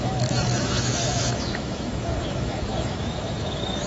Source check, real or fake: fake